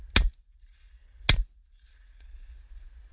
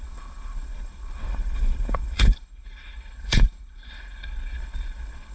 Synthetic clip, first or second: second